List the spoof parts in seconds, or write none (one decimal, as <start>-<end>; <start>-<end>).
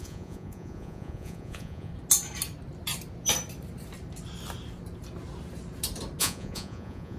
0.0-1.9; 6.2-7.2